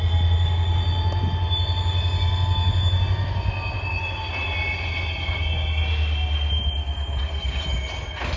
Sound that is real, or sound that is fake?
real